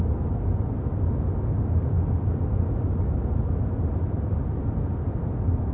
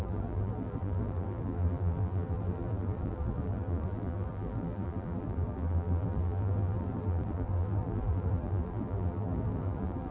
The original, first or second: first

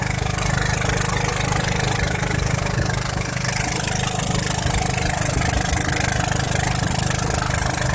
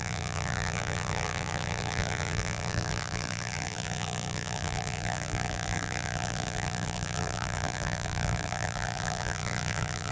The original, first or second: first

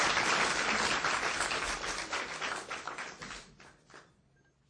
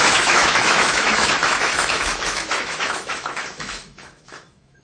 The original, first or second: first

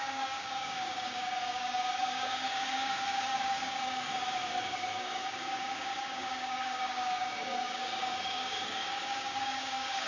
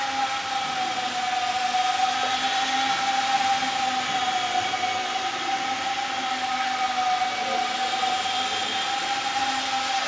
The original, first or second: second